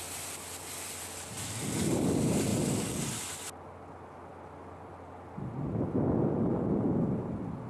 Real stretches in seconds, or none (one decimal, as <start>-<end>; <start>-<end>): 0.0-2.5; 3.0-7.7